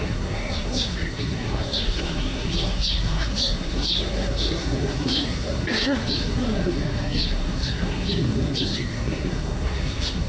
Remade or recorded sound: remade